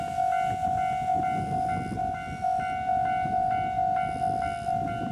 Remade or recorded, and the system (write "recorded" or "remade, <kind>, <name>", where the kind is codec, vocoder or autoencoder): recorded